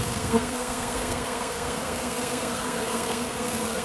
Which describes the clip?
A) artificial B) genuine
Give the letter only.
A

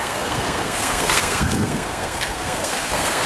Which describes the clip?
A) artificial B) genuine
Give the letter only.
A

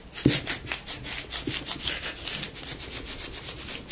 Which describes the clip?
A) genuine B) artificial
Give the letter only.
A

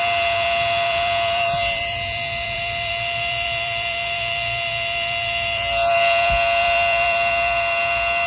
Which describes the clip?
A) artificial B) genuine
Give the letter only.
A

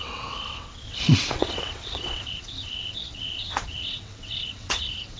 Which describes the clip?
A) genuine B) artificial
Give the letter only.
B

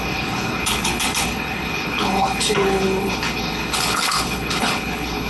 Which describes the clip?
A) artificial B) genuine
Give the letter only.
A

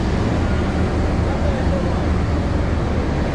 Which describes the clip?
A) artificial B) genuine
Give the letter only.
B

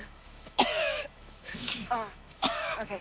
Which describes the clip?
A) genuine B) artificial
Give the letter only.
B